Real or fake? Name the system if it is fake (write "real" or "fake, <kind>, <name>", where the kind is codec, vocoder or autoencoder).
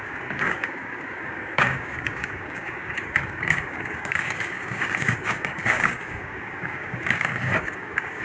fake, codec, DAC